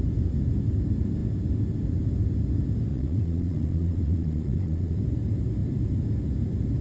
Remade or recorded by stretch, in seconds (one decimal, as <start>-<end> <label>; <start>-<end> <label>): 0.0-2.9 recorded; 2.9-5.0 remade; 5.0-6.8 recorded

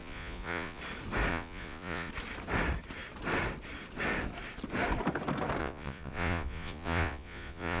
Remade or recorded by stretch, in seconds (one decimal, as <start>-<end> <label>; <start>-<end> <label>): 0.0-0.8 remade; 0.8-1.3 recorded; 1.3-2.1 remade; 2.1-5.6 recorded; 5.6-7.8 remade

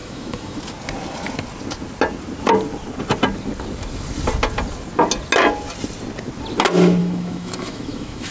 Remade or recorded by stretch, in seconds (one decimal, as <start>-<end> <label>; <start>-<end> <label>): 0.0-0.6 remade; 0.6-7.0 recorded; 7.0-8.3 remade

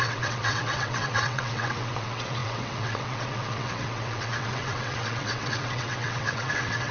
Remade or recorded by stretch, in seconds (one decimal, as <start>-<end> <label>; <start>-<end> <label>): 0.0-6.9 remade

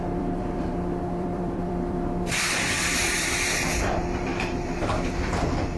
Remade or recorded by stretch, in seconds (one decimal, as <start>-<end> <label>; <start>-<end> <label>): 0.0-5.8 remade

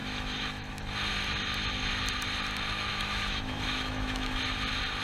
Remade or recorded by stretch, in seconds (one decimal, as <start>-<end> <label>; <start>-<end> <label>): 0.0-0.7 remade; 0.7-2.9 recorded; 2.9-4.4 remade; 4.4-5.0 recorded

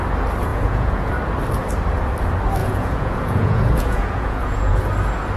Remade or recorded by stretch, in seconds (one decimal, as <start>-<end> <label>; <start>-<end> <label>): 0.0-0.5 recorded; 0.5-1.1 remade; 1.1-2.6 recorded; 2.6-4.8 remade; 4.8-5.4 recorded

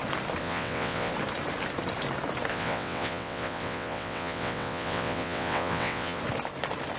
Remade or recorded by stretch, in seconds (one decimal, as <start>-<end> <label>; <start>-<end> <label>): 0.0-0.4 recorded; 0.4-1.1 remade; 1.1-2.5 recorded; 2.5-6.2 remade; 6.2-7.0 recorded